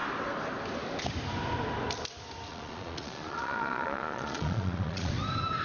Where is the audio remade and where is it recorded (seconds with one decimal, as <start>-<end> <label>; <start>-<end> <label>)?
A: 0.0-2.5 recorded; 2.5-5.1 remade; 5.1-5.6 recorded